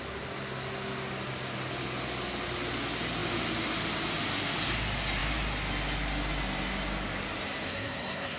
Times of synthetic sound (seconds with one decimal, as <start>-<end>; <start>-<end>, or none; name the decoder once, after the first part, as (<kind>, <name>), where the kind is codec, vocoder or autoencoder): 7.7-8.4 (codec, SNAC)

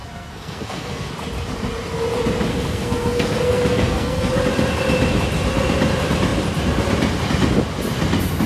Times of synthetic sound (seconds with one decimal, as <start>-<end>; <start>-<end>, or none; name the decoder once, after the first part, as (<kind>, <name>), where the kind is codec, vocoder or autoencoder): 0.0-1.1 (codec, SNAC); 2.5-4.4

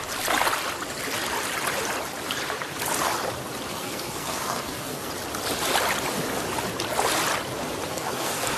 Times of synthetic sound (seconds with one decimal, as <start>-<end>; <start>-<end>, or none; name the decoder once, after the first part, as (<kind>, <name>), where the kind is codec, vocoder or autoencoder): 3.7-5.1 (codec, SNAC); 7.9-8.6

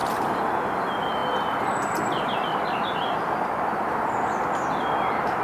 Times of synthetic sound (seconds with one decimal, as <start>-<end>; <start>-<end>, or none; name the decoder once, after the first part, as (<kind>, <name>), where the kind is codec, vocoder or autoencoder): none

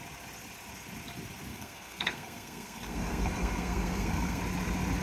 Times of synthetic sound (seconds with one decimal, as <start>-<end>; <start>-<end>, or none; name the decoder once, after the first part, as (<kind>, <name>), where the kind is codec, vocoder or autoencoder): 1.5-4.4 (codec, SNAC)

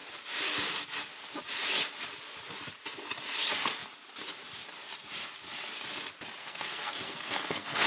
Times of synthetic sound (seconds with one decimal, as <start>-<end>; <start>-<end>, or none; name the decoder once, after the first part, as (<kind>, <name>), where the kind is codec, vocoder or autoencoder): 6.4-7.9 (codec, SNAC)